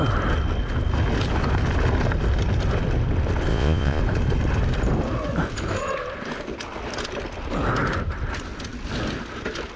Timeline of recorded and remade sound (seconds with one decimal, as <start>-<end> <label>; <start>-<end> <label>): 0.0-3.5 recorded; 3.5-4.0 remade; 4.0-9.8 recorded